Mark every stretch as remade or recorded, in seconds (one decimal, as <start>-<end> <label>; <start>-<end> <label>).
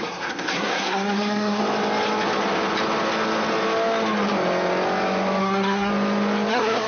0.0-1.6 remade; 1.6-5.4 recorded; 5.4-5.9 remade; 5.9-6.5 recorded; 6.5-6.9 remade